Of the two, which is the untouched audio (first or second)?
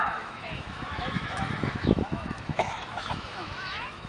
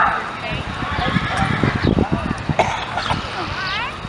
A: second